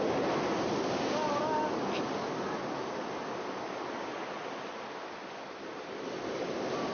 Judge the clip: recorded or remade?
recorded